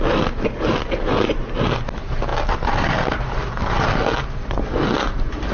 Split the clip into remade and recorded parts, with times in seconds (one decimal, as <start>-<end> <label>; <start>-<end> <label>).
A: 0.0-5.5 recorded